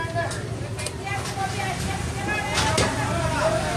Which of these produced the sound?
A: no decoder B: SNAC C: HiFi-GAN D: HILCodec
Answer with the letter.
A